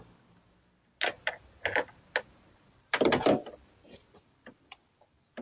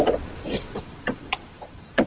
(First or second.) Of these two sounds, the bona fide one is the first